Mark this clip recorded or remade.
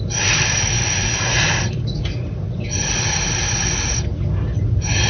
recorded